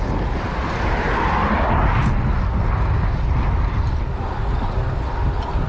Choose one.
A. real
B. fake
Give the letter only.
A